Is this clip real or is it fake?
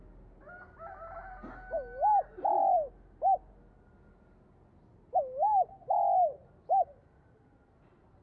real